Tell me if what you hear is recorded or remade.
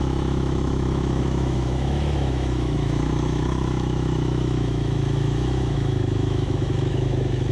remade